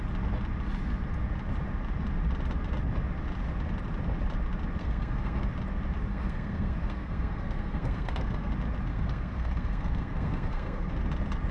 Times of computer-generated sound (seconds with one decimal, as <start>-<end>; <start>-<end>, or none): 4.8-5.5; 6.1-8.5; 8.9-10.9

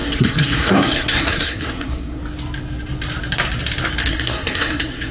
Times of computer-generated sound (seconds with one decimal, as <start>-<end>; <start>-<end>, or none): 0.0-2.2; 4.0-5.1

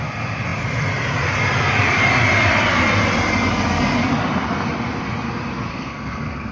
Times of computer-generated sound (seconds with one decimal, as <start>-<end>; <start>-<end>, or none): 5.7-6.5

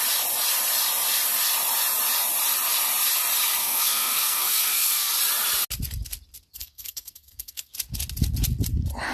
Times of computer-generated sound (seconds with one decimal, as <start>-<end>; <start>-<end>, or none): 3.6-5.1; 6.5-7.7